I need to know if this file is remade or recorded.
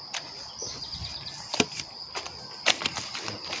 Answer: recorded